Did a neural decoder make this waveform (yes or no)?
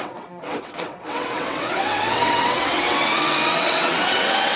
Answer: yes